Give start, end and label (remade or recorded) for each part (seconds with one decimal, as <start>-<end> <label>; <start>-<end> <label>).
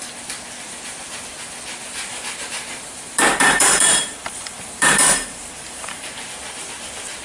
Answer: 0.0-1.8 recorded; 1.8-6.1 remade; 6.1-7.2 recorded